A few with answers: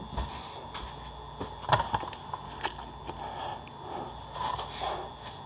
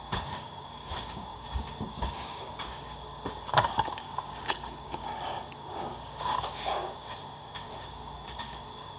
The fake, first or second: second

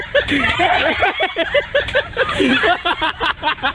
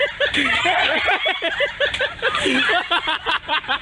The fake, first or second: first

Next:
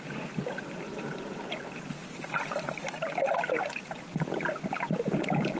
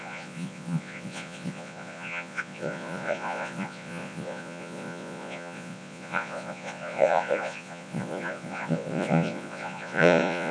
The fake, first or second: second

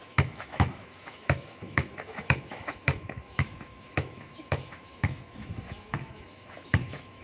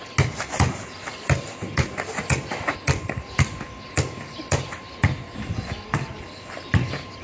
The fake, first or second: first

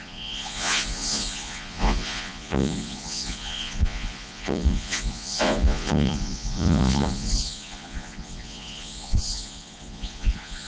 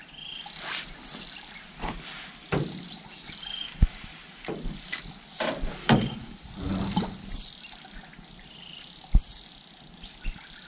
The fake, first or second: first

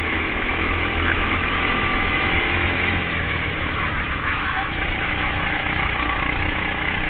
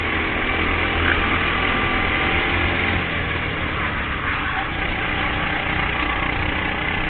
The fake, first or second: first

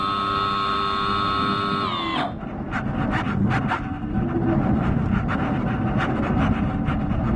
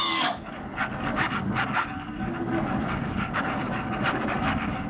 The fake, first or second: second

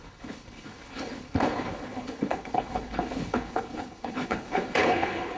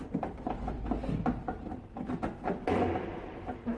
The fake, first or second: first